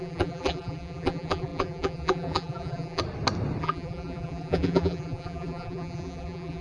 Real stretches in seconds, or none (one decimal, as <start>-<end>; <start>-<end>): 3.0-3.6